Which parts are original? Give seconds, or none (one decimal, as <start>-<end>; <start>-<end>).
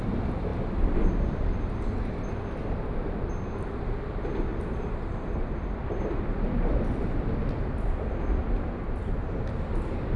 0.0-4.5; 8.1-10.2